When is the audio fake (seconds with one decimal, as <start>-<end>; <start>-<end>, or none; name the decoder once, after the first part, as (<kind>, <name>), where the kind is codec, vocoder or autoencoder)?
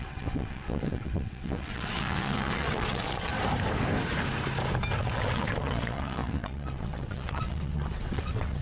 0.0-3.3 (vocoder, WaveNeXt); 5.0-8.6